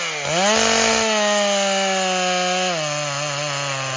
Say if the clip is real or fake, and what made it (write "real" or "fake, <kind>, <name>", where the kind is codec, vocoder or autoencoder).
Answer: real